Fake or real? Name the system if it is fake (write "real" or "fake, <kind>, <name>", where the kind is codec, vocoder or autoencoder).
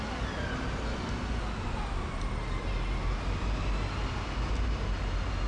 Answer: real